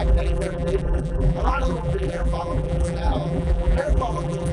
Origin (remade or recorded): remade